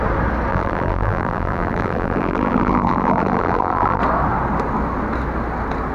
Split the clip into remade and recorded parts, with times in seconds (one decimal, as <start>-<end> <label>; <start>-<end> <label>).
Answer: 0.0-0.5 recorded; 0.5-4.0 remade; 4.0-5.9 recorded